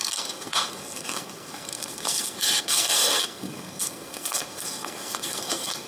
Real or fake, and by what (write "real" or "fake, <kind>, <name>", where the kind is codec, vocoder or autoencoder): fake, codec, SNAC